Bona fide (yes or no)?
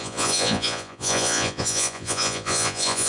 no